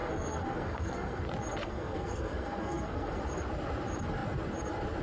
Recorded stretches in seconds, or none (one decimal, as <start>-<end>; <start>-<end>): 1.2-1.6; 3.2-5.0